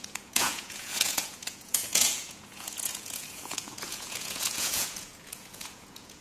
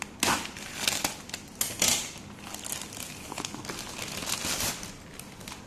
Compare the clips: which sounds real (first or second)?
second